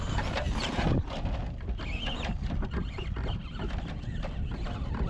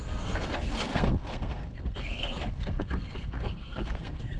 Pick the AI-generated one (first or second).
second